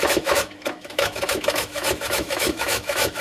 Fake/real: fake